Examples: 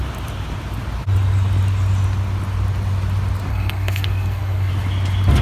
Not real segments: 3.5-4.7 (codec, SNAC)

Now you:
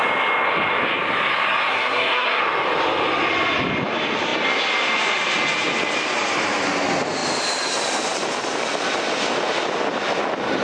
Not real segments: 1.7-2.4 (codec, SNAC)